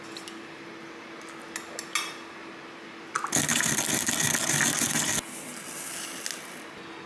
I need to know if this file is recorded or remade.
recorded